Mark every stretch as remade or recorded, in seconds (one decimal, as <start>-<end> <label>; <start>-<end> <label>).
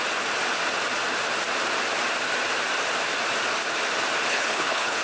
0.0-4.3 recorded; 4.3-5.0 remade